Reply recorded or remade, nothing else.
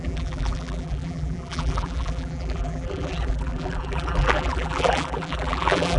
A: remade